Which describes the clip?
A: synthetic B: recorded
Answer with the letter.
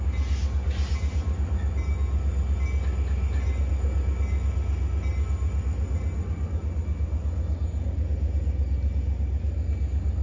B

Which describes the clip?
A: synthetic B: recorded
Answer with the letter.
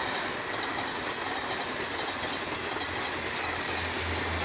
B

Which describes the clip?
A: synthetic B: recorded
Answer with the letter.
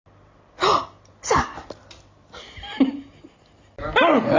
B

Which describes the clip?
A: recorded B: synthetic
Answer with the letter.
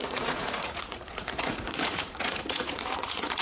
B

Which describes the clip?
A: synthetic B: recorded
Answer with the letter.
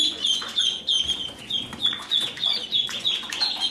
A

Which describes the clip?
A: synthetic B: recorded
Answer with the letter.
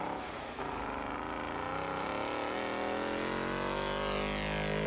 B